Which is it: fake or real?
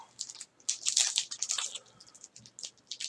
real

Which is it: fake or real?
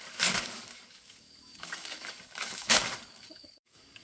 fake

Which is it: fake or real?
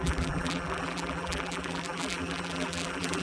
fake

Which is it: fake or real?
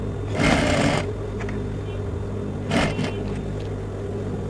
real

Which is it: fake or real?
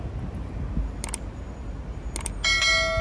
real